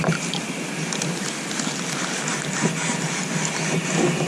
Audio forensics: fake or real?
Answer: real